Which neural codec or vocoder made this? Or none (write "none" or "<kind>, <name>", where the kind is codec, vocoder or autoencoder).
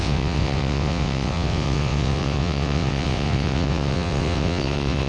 vocoder, WaveNeXt